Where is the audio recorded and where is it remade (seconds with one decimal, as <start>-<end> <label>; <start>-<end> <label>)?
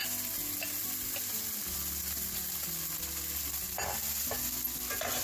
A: 0.0-5.2 recorded